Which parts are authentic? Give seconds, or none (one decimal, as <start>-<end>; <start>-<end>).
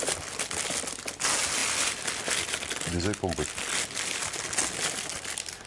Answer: 0.0-5.7